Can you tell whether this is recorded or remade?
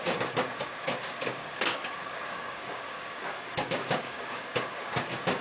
remade